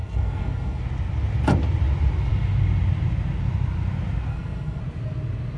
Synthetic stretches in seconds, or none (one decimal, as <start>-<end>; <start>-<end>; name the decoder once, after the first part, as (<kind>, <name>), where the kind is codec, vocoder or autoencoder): 0.0-0.8 (codec, SNAC); 4.3-4.8